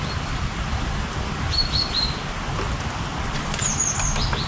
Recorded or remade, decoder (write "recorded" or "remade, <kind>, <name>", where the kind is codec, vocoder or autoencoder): remade, vocoder, BigVGAN v2